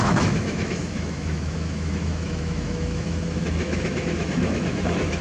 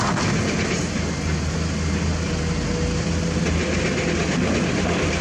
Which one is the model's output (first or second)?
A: first